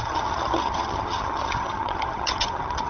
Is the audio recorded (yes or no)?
no